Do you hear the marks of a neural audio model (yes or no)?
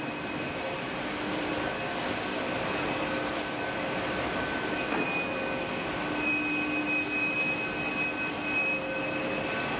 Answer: no